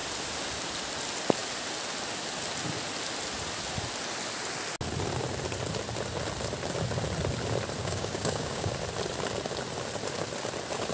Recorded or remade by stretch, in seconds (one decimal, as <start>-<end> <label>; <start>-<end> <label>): 0.0-7.8 recorded; 7.8-8.7 remade; 8.7-10.9 recorded